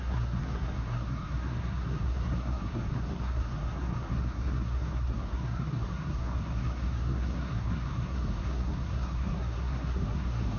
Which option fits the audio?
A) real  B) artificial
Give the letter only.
B